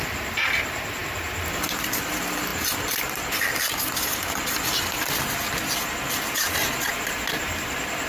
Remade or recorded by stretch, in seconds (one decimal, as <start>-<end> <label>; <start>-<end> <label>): 0.0-2.5 remade; 2.5-6.8 recorded; 6.8-8.1 remade